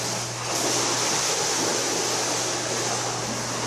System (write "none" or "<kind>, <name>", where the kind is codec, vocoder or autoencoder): none